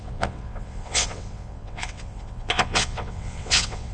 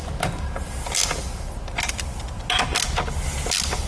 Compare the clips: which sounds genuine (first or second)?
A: second